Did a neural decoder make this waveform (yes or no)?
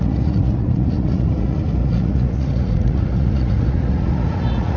yes